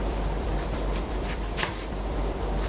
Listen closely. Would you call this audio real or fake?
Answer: fake